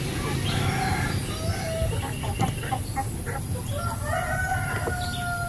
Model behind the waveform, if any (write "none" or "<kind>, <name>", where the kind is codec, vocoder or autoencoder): none